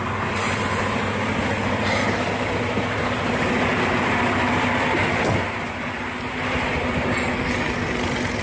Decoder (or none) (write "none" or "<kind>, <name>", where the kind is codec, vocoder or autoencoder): none